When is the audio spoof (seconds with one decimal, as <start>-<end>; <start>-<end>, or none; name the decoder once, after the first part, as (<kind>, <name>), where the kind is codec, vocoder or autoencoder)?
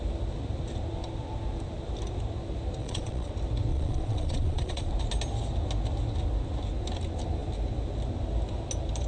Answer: 2.8-3.3 (vocoder, Vocos); 3.7-4.9